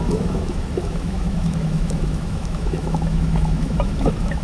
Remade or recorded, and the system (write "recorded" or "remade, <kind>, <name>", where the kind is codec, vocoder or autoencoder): remade, autoencoder, DAC-VAE